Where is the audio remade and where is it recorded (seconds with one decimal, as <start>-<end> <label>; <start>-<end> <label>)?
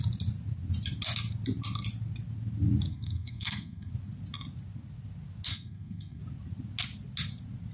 0.0-2.9 recorded; 2.9-3.9 remade; 3.9-5.5 recorded; 5.5-6.2 remade; 6.2-7.7 recorded